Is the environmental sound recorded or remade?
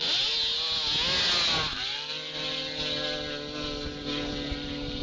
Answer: recorded